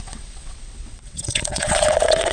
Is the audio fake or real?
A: fake